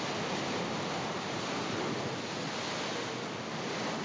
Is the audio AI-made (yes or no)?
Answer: no